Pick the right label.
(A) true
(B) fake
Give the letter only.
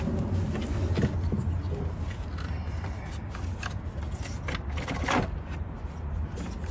A